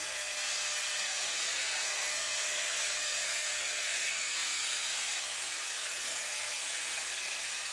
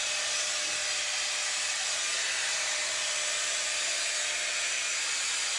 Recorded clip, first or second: second